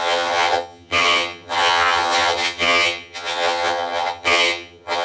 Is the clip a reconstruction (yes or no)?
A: yes